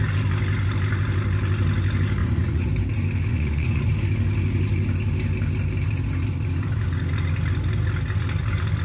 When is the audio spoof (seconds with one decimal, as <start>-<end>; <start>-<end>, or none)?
2.2-2.7; 3.3-3.9